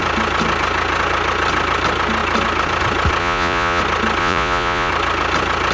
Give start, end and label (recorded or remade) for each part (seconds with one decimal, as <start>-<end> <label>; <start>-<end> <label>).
0.0-3.2 recorded; 3.2-3.8 remade; 3.8-4.2 recorded; 4.2-4.9 remade; 4.9-5.7 recorded